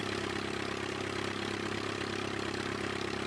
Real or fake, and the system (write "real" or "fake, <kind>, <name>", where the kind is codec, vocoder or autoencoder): real